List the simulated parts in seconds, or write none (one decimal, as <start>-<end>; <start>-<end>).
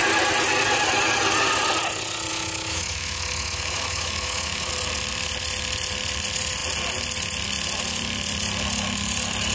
2.3-4.7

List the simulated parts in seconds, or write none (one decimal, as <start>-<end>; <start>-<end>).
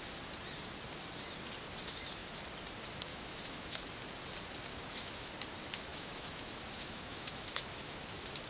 3.1-3.8; 4.7-5.3; 5.9-8.0